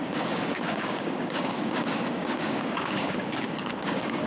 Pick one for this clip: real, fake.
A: fake